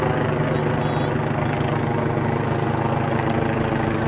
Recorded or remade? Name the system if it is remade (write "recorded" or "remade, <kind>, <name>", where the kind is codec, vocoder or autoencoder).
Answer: recorded